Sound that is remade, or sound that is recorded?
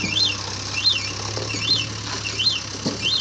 recorded